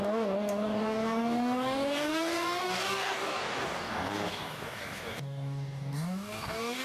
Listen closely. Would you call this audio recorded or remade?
remade